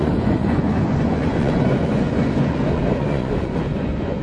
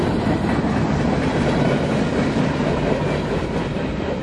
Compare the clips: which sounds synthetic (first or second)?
first